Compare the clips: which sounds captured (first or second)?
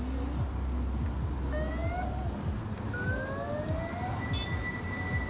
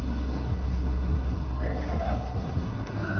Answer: first